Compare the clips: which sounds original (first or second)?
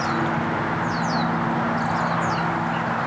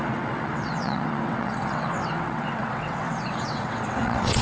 first